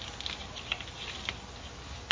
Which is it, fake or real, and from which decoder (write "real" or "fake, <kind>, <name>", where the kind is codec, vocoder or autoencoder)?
real